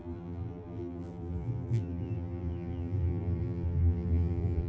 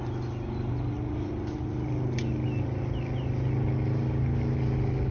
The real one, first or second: second